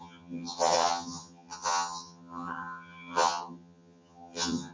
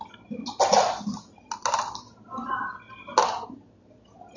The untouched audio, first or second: second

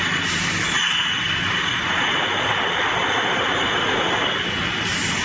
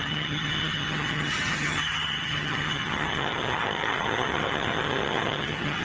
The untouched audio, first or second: first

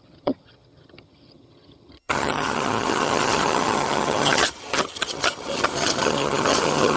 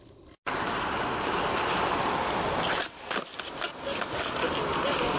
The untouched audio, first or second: second